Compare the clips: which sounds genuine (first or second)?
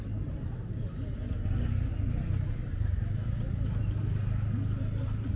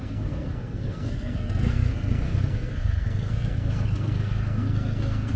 first